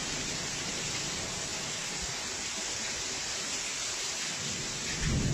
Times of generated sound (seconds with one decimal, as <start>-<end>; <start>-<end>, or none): 0.0-0.7